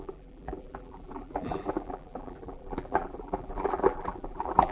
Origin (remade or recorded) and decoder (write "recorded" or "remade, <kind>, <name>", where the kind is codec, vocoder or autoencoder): remade, vocoder, BigVGAN v2